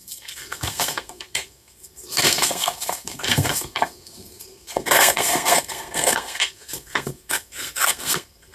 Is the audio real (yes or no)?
no